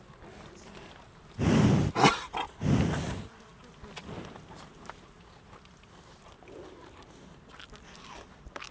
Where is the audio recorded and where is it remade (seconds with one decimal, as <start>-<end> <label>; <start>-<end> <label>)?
0.0-8.7 recorded